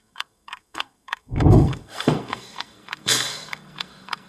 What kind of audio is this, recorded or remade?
remade